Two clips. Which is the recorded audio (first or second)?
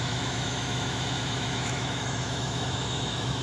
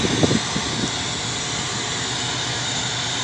second